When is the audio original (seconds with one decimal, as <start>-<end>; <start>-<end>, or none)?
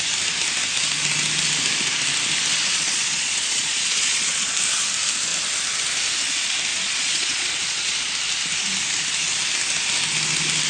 0.0-2.7; 4.5-6.7; 8.1-10.7